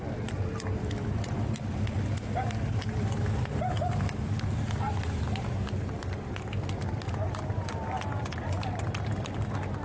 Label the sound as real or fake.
real